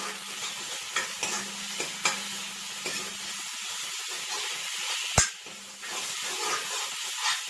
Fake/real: real